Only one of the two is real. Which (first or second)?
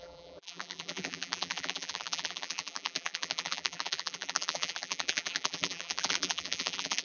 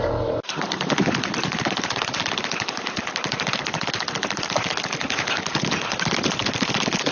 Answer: second